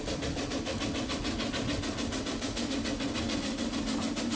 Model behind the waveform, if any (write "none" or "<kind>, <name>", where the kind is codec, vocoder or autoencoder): none